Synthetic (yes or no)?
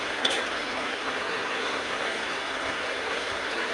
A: yes